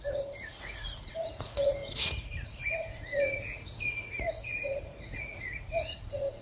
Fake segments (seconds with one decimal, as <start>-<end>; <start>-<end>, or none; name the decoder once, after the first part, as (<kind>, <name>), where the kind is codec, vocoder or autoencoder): 0.0-6.4 (vocoder, Vocos)